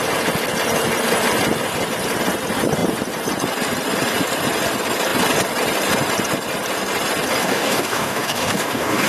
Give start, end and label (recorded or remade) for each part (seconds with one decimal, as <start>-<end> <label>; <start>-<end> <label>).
0.0-7.4 recorded; 7.4-9.1 remade